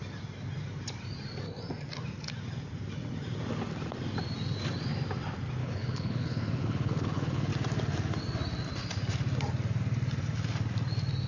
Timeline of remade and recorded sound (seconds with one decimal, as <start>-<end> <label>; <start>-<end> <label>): 0.0-5.6 recorded; 5.6-7.5 remade; 7.5-11.3 recorded

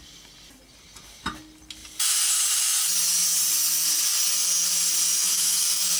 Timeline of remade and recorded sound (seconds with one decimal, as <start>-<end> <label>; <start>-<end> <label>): 0.0-5.1 recorded; 5.1-6.0 remade

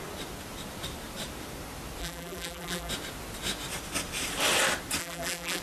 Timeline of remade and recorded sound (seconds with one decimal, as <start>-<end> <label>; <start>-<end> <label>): 0.0-2.0 recorded; 2.0-2.9 remade; 2.9-5.0 recorded; 5.0-5.6 remade

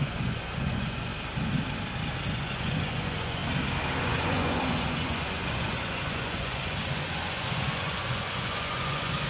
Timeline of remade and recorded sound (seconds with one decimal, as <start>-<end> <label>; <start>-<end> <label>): 0.0-1.1 remade; 1.1-2.3 recorded; 2.3-3.4 remade; 3.4-4.0 recorded; 4.0-9.3 remade

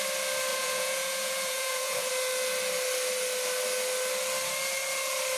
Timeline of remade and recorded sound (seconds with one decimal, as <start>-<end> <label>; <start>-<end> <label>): 0.0-0.5 recorded; 0.5-2.1 remade; 2.1-5.4 recorded